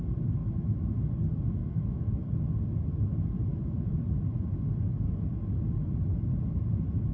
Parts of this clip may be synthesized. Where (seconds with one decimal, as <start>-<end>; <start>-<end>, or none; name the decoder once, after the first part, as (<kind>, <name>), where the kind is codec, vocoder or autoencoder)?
0.4-0.9 (autoencoder, DAC-VAE); 1.6-2.1; 3.5-4.0